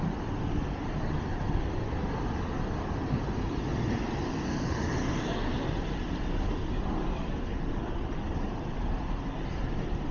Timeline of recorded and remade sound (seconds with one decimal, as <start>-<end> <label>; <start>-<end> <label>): 0.0-10.1 remade